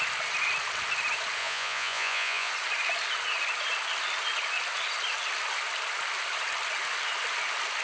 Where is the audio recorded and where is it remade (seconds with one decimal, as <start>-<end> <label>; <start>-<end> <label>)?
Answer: 0.0-1.4 recorded; 1.4-2.5 remade; 2.5-7.8 recorded